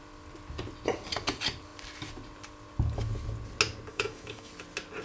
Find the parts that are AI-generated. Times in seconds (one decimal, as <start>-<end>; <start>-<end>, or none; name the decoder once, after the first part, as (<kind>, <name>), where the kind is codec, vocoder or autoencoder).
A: 3.9-4.5 (autoencoder, DAC-VAE)